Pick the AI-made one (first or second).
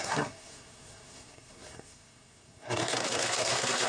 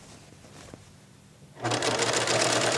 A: first